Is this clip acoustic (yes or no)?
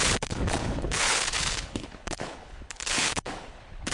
no